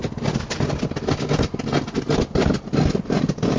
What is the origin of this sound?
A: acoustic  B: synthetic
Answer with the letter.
A